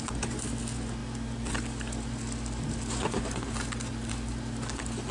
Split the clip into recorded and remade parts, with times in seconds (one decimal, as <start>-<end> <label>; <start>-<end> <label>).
0.0-5.1 recorded